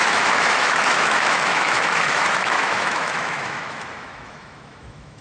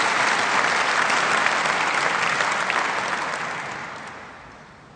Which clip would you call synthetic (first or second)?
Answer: first